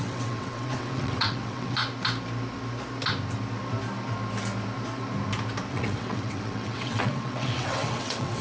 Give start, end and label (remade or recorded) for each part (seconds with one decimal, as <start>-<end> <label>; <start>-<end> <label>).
0.0-1.8 remade; 1.8-5.7 recorded; 5.7-8.4 remade

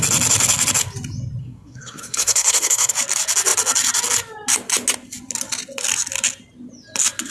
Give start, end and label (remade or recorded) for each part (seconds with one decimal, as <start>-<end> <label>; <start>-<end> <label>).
0.0-1.4 recorded; 1.4-2.9 remade; 2.9-7.3 recorded

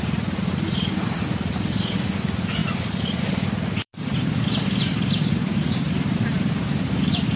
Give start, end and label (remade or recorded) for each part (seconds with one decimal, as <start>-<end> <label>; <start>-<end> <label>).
0.0-2.6 recorded; 2.6-6.9 remade; 6.9-7.4 recorded

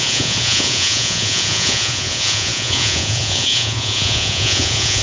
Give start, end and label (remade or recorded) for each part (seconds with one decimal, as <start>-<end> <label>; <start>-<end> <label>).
0.0-5.0 remade

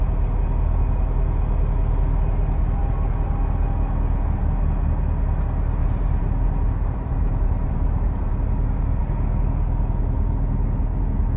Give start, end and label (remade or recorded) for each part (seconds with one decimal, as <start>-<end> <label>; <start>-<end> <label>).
0.0-5.8 recorded; 5.8-8.3 remade; 8.3-11.4 recorded

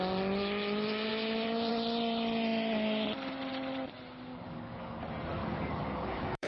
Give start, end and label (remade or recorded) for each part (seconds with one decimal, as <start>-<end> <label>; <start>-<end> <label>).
0.0-4.3 recorded; 4.3-5.0 remade; 5.0-5.4 recorded; 5.4-6.5 remade

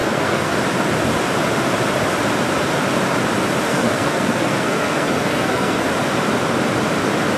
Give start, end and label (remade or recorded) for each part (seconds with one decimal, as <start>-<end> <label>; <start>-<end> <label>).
0.0-0.6 remade; 0.6-3.7 recorded; 3.7-5.9 remade; 5.9-7.4 recorded

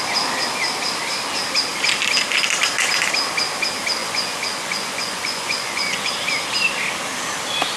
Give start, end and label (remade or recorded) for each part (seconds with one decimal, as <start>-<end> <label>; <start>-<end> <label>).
0.0-4.0 recorded; 4.0-6.1 remade; 6.1-7.8 recorded